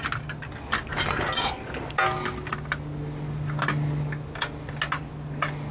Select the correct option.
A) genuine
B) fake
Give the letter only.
A